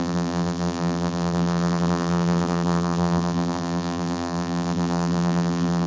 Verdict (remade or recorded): remade